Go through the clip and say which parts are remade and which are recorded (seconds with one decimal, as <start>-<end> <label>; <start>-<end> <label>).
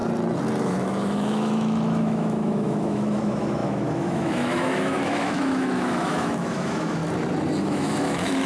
0.0-0.6 recorded; 0.6-7.0 remade; 7.0-7.6 recorded; 7.6-8.5 remade